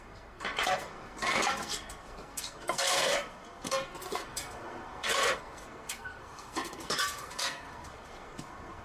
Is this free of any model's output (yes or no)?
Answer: no